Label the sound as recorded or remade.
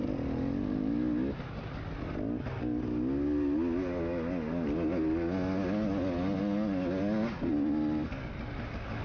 recorded